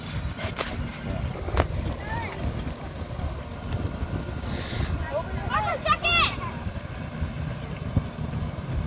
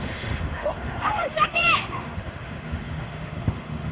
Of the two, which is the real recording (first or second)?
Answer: first